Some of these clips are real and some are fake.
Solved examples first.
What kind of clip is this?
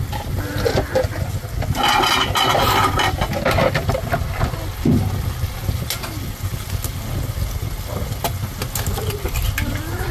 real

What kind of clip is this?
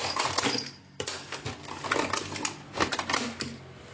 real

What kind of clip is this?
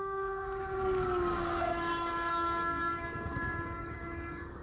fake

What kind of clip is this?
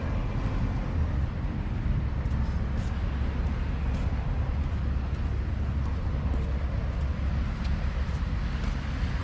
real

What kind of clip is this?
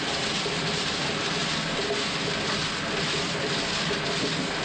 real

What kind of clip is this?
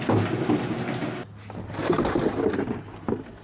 real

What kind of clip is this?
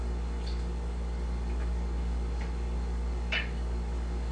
fake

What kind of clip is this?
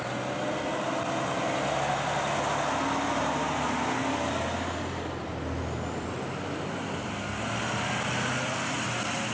real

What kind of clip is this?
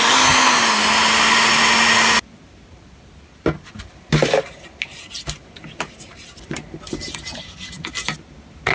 real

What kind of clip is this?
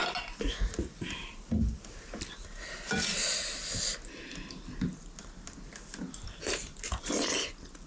real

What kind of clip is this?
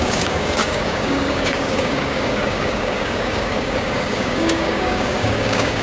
fake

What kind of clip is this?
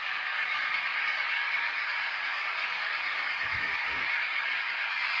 fake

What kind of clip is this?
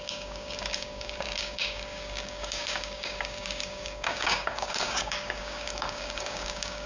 fake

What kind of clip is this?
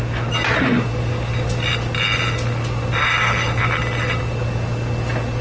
real